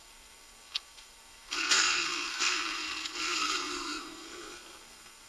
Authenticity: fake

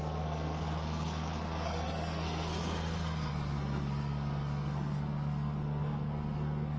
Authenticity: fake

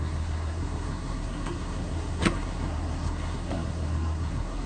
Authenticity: fake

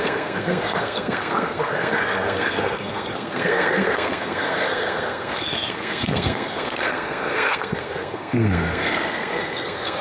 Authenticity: fake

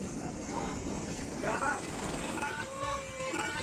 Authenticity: fake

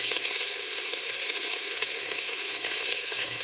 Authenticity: fake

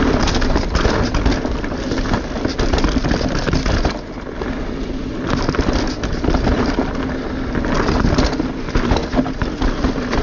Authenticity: real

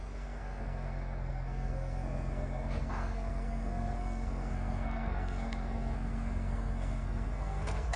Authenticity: fake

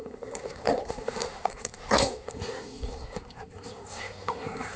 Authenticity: fake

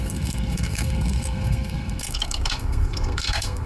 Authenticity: fake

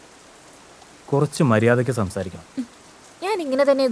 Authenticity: real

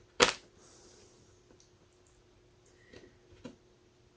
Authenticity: real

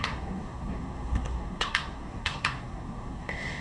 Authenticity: fake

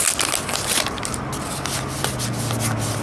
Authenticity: real